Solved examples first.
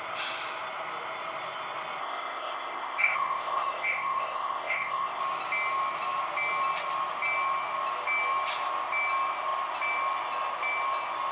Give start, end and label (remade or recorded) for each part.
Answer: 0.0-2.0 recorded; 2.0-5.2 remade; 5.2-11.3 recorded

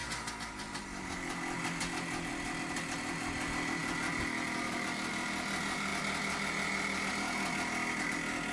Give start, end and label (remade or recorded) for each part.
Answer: 0.0-8.5 recorded